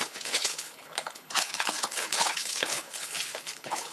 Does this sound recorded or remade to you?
remade